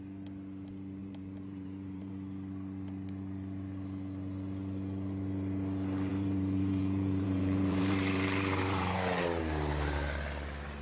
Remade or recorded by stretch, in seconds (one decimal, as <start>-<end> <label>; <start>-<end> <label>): 0.0-1.0 recorded; 1.0-2.1 remade; 2.1-6.1 recorded; 6.1-9.4 remade; 9.4-10.8 recorded

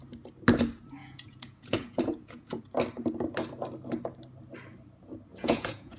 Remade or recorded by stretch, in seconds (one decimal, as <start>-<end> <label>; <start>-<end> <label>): 0.0-1.0 recorded; 1.0-2.6 remade; 2.6-5.3 recorded; 5.3-6.0 remade

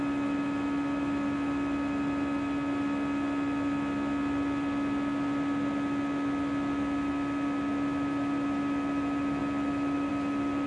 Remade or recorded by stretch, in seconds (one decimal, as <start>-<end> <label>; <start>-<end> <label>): 0.0-10.7 recorded

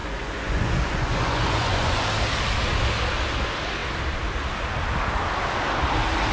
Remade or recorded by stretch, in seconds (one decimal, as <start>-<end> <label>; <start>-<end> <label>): 0.0-2.0 remade; 2.0-6.3 recorded

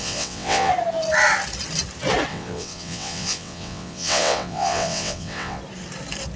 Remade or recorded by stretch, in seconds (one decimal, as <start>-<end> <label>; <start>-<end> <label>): 0.0-0.7 remade; 0.7-2.3 recorded; 2.3-5.6 remade; 5.6-6.4 recorded

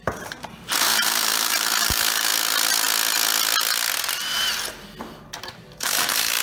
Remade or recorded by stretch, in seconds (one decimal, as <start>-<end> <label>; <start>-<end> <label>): 0.0-2.3 remade; 2.3-5.0 recorded; 5.0-6.4 remade

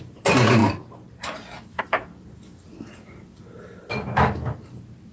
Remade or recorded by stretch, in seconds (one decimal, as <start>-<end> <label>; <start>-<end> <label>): 0.0-5.1 recorded

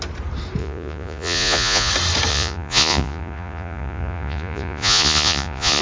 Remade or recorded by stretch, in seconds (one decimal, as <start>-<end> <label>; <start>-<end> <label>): 0.0-0.6 recorded; 0.6-1.9 remade; 1.9-2.3 recorded; 2.3-5.8 remade